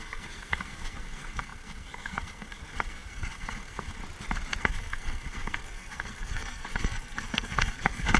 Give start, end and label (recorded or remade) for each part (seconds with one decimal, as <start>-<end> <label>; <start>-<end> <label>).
0.0-4.0 remade; 4.0-4.6 recorded; 4.6-8.2 remade

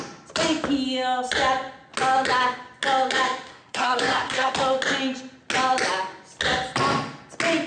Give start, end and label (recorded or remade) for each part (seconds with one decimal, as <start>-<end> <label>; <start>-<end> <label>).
0.0-3.5 recorded; 3.5-4.5 remade; 4.5-7.7 recorded

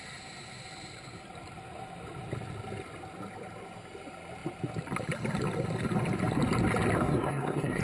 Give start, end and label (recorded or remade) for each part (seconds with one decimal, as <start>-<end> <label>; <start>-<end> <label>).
0.0-7.0 recorded; 7.0-7.8 remade

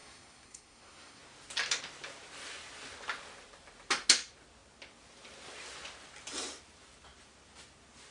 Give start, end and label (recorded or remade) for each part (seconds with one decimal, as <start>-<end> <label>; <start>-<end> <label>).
0.0-1.2 remade; 1.2-8.1 recorded

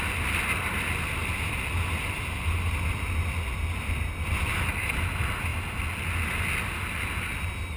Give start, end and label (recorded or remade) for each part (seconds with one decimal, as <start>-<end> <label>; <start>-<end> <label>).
0.0-7.8 recorded

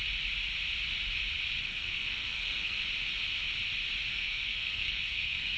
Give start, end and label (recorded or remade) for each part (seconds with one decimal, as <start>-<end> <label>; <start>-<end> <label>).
0.0-1.7 recorded; 1.7-2.8 remade; 2.8-4.1 recorded; 4.1-5.6 remade

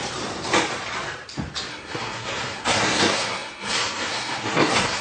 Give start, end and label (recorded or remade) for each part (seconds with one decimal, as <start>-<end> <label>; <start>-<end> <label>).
0.0-1.7 recorded; 1.7-5.0 remade